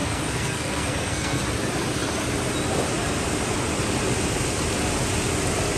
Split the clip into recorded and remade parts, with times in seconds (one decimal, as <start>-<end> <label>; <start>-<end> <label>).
0.0-1.4 remade; 1.4-5.8 recorded